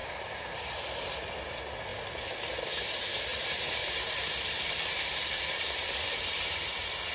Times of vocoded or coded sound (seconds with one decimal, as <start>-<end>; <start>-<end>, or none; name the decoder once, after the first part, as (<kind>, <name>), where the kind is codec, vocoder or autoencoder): 0.0-0.9 (vocoder, BigVGAN v2); 3.3-5.2